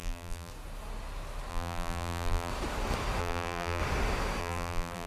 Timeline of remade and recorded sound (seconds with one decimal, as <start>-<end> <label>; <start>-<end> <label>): 0.0-0.5 remade; 0.5-1.5 recorded; 1.5-2.5 remade; 2.5-3.2 recorded; 3.2-3.8 remade; 3.8-4.4 recorded; 4.4-5.1 remade